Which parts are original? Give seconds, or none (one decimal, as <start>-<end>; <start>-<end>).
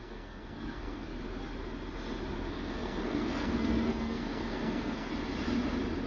1.1-2.5; 5.1-6.1